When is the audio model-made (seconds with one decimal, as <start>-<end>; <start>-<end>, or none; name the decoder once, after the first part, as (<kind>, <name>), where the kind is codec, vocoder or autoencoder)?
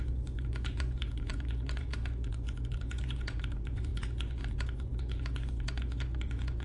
0.0-6.6 (vocoder, Vocos)